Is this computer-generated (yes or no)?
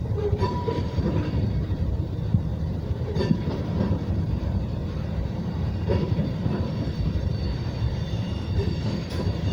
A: yes